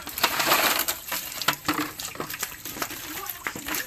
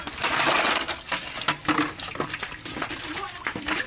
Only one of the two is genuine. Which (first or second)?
second